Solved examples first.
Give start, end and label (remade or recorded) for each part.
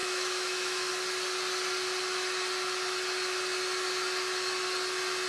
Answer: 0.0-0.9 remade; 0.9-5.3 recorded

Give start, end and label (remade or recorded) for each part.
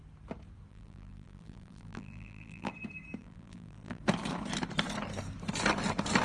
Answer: 0.0-0.7 recorded; 0.7-2.7 remade; 2.7-3.2 recorded; 3.2-4.0 remade; 4.0-6.2 recorded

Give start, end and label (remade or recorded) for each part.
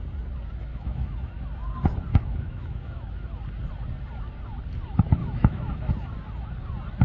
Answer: 0.0-0.7 recorded; 0.7-1.4 remade; 1.4-2.1 recorded; 2.1-3.1 remade; 3.1-5.2 recorded; 5.2-5.9 remade; 5.9-7.0 recorded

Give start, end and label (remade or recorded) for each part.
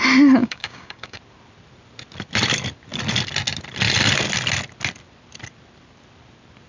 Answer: 0.0-0.4 recorded; 0.4-1.2 remade; 1.2-6.7 recorded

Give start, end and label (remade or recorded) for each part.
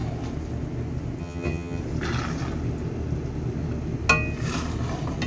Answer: 0.0-1.2 recorded; 1.2-1.8 remade; 1.8-5.3 recorded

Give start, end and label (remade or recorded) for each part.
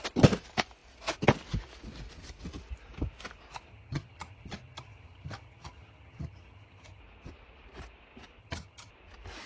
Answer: 0.0-3.7 recorded; 3.7-7.0 remade; 7.0-8.4 recorded; 8.4-8.9 remade; 8.9-9.5 recorded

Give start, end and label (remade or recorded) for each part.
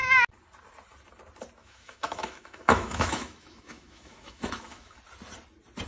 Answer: 0.0-1.6 recorded; 1.6-5.0 remade; 5.0-5.9 recorded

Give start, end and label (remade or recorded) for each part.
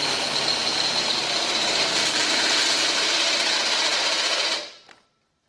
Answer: 0.0-0.7 recorded; 0.7-3.1 remade; 3.1-5.5 recorded